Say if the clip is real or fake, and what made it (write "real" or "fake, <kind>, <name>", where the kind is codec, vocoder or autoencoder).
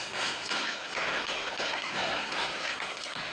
fake, codec, SNAC